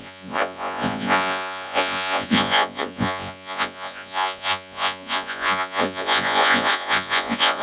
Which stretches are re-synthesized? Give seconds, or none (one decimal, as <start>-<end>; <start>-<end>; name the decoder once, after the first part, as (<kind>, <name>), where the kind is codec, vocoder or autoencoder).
0.0-7.6 (vocoder, Vocos)